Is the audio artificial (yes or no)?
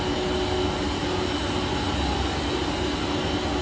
no